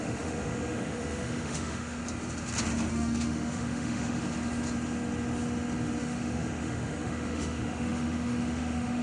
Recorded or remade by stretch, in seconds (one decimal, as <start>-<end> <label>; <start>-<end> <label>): 0.0-2.0 remade; 2.0-2.9 recorded; 2.9-4.2 remade; 4.2-6.0 recorded; 6.0-9.0 remade